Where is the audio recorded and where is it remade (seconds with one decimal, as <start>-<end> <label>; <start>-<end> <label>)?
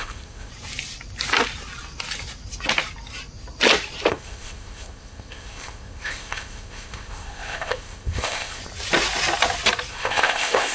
0.0-0.5 remade; 0.5-4.1 recorded; 4.1-8.6 remade; 8.6-9.9 recorded; 9.9-10.7 remade